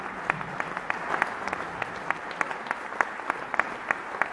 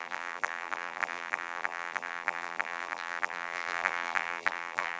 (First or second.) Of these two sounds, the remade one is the second